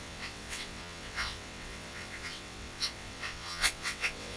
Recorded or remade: remade